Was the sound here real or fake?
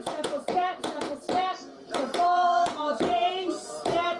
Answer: fake